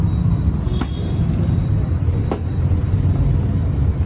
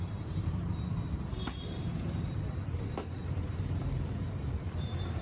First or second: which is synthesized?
second